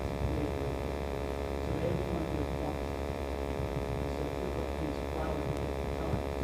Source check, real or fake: fake